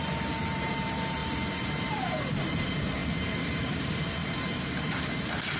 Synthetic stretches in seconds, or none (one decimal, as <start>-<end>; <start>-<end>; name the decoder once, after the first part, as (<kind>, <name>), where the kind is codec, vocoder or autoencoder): 0.0-5.6 (vocoder, BigVGAN v2)